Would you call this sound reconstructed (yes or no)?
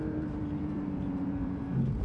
yes